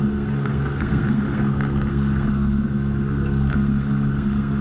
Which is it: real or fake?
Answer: fake